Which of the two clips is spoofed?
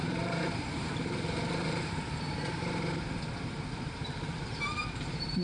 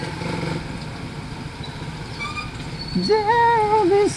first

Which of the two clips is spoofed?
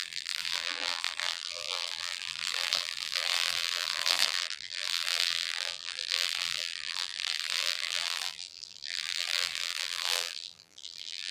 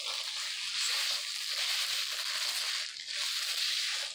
first